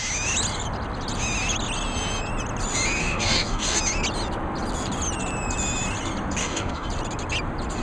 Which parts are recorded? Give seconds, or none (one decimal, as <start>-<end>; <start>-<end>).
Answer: 0.0-3.0; 3.8-6.4; 6.9-7.8